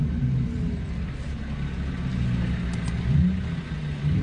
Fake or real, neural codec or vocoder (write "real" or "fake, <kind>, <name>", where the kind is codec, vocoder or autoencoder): real